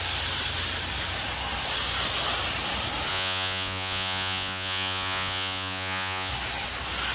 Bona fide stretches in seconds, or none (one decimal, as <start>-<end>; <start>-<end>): 0.0-3.1; 6.3-7.1